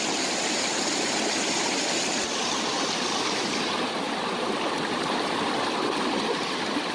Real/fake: real